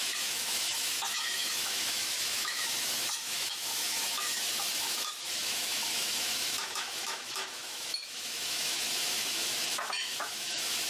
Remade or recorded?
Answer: remade